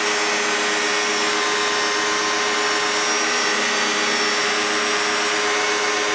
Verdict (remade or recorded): recorded